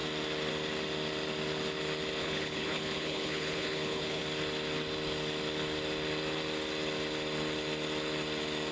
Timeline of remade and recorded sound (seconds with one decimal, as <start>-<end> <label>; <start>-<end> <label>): 0.0-2.2 recorded; 2.2-4.2 remade; 4.2-8.7 recorded